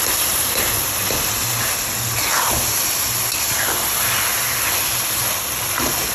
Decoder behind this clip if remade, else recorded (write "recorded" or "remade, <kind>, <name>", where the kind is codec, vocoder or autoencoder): recorded